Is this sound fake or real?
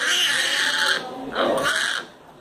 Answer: real